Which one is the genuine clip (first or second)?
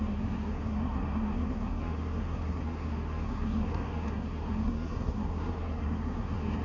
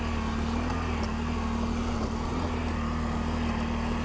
second